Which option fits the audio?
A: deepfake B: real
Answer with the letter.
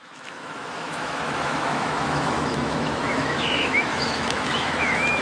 A